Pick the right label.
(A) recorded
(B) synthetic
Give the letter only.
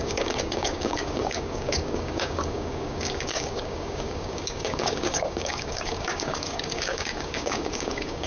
B